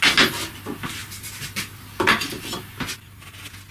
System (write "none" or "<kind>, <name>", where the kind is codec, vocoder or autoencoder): none